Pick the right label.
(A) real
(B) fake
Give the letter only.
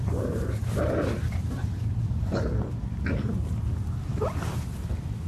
A